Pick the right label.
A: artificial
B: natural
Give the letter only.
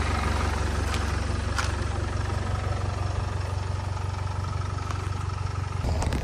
B